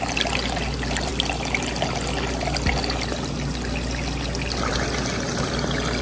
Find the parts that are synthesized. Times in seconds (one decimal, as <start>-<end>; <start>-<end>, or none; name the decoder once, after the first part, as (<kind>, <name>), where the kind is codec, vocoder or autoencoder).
none